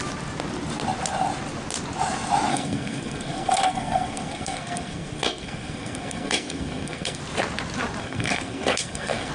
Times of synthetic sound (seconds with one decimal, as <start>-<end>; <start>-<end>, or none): 2.5-7.2; 8.0-9.3